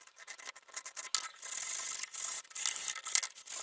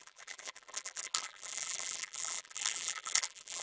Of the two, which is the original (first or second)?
first